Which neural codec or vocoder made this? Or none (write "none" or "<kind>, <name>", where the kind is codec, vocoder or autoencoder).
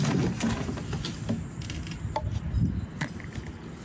none